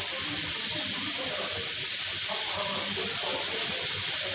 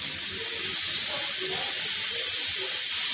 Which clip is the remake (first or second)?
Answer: first